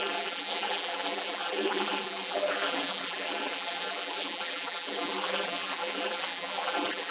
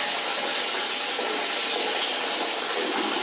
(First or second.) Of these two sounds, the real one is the second